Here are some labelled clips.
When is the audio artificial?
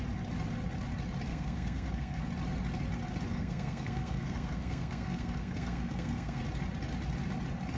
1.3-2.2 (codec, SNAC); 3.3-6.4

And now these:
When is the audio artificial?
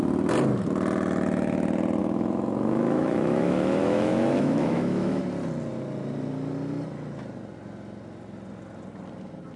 2.0-5.2 (autoencoder, DAC-VAE)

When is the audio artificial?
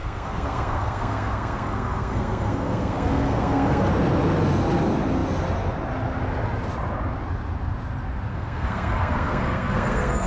0.0-3.9 (codec, SNAC); 8.3-10.3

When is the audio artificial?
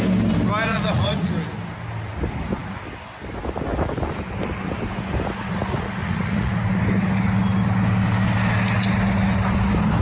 0.7-1.3 (vocoder, Vocos); 6.0-6.5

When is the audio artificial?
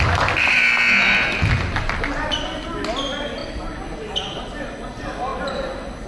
none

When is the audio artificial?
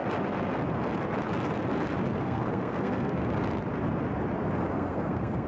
2.2-3.2 (codec, SNAC); 4.7-5.5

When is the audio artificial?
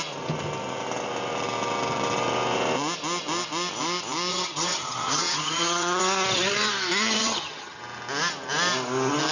4.3-6.0 (vocoder, HiFi-GAN); 7.2-7.8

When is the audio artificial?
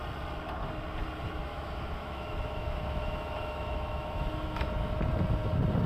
1.5-4.9 (autoencoder, DAC-VAE)